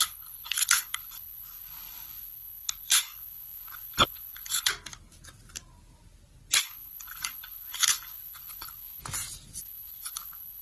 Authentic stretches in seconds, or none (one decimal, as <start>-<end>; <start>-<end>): 4.7-6.6; 9.0-9.6